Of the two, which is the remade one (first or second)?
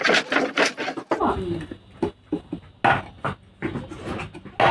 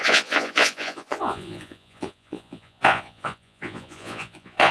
second